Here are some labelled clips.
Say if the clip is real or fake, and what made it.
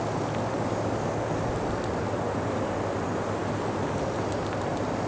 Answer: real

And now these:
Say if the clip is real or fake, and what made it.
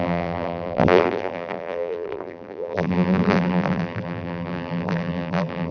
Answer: fake, vocoder, BigVGAN v2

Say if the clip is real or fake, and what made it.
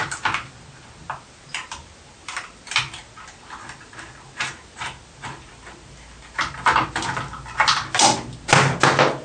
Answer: real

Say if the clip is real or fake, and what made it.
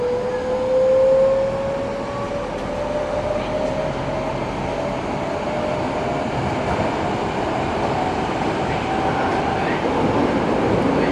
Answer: real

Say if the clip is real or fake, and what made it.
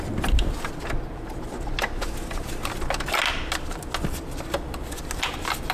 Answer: real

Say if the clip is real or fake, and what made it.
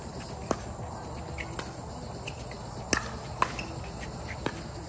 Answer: real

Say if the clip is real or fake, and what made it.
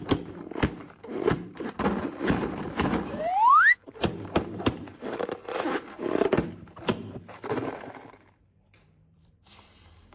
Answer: fake, vocoder, BigVGAN v2